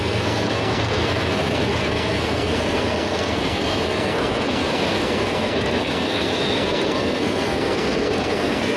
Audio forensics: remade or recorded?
remade